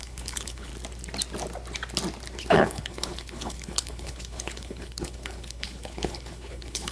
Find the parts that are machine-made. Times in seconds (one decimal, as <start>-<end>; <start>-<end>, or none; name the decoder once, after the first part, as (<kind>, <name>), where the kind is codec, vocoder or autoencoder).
0.0-0.7 (codec, HILCodec); 2.4-6.9